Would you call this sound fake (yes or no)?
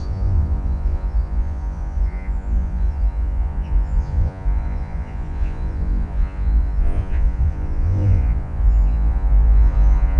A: yes